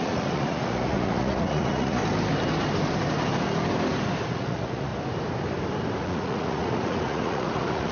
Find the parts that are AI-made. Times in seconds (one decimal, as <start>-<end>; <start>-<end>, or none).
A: 0.0-2.0; 4.3-4.9; 6.0-7.9

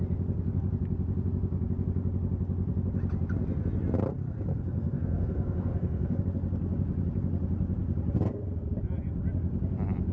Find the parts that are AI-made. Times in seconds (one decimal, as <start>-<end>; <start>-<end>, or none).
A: 4.5-6.2

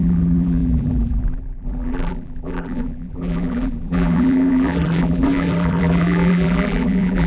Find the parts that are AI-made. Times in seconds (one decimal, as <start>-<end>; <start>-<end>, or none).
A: 0.0-7.3

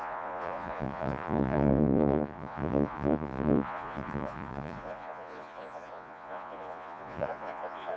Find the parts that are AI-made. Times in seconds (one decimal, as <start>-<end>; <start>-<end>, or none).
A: 0.0-8.0

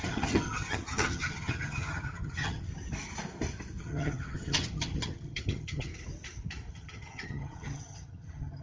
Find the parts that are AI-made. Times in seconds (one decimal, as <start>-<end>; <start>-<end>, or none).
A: 0.0-2.7; 3.8-5.9; 6.7-8.6

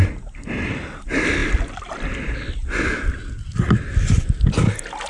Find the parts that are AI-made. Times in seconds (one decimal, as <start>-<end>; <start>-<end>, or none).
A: none

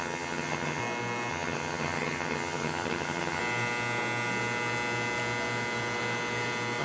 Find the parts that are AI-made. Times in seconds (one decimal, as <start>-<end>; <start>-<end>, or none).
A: 0.0-0.8; 1.3-3.4